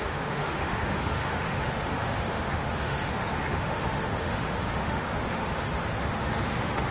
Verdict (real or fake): fake